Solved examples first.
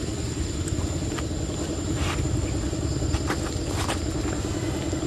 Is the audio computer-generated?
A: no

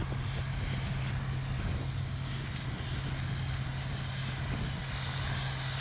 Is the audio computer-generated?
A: no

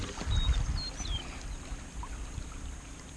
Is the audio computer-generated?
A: no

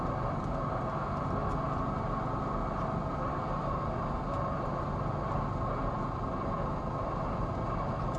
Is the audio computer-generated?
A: no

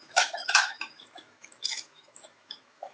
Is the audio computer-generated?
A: yes